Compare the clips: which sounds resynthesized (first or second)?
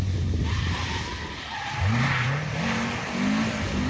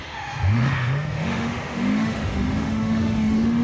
second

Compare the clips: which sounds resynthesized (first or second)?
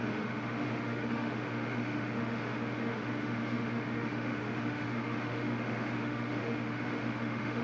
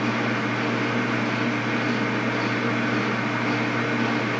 first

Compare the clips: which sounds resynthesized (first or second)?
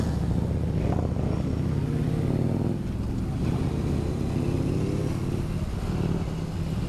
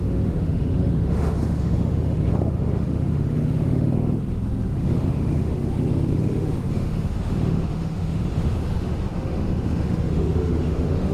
second